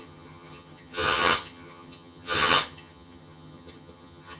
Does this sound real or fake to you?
fake